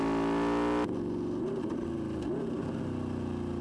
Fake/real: real